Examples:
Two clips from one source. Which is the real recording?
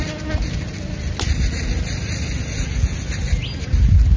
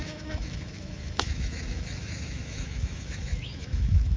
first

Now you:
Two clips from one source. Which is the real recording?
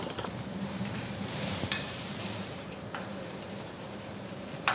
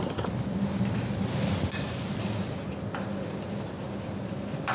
second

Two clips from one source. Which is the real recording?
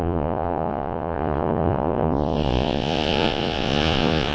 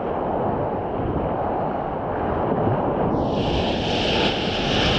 second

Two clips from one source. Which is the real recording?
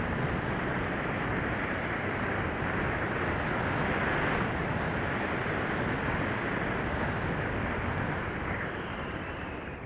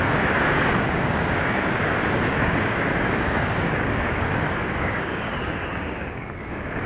first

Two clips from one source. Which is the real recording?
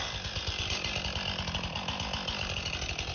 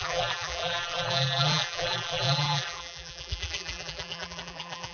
first